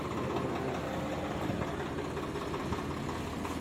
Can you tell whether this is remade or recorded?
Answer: recorded